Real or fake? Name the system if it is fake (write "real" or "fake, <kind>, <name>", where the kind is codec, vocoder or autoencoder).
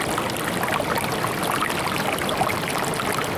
real